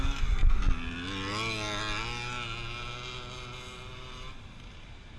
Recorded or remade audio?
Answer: recorded